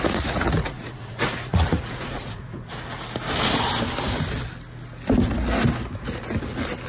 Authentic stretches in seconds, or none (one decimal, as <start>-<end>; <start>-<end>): 2.7-6.9